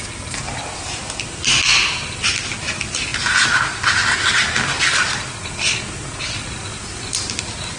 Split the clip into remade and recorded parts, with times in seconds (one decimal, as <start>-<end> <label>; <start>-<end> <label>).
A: 0.0-7.8 recorded

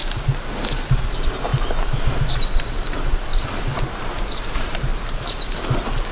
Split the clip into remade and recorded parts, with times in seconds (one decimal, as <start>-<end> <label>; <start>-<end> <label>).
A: 0.0-0.9 recorded; 0.9-3.3 remade; 3.3-4.0 recorded; 4.0-4.9 remade; 4.9-6.1 recorded

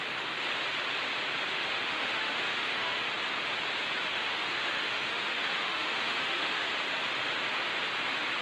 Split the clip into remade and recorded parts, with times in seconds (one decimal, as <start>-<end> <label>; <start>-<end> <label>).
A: 0.0-1.5 recorded; 1.5-3.1 remade; 3.1-4.1 recorded; 4.1-6.7 remade; 6.7-8.4 recorded

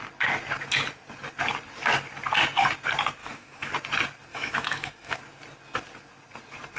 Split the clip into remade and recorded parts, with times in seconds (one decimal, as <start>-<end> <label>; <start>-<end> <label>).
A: 0.0-3.2 recorded; 3.2-3.7 remade; 3.7-4.3 recorded; 4.3-5.2 remade; 5.2-6.8 recorded

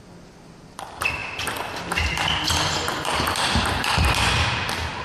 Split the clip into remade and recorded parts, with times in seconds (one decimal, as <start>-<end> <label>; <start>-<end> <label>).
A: 0.0-5.0 recorded

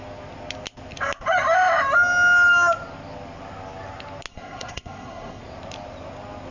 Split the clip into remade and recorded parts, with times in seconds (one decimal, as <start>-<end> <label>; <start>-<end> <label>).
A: 0.0-4.3 recorded; 4.3-5.4 remade; 5.4-6.5 recorded

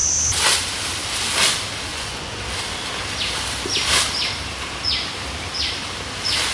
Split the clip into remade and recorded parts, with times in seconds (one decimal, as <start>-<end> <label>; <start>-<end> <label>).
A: 0.0-1.9 recorded; 1.9-2.4 remade; 2.4-6.5 recorded